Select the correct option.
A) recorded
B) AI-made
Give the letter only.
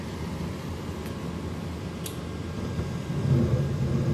A